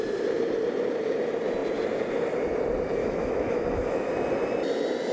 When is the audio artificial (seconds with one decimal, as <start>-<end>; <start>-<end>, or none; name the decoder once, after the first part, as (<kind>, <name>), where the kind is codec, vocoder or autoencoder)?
3.0-4.1 (autoencoder, DAC-VAE)